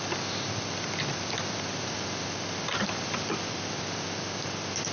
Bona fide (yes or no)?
yes